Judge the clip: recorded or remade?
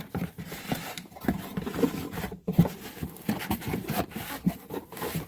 remade